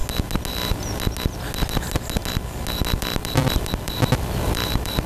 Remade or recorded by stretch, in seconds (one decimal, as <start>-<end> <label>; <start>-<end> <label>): 0.0-3.0 recorded; 3.0-5.1 remade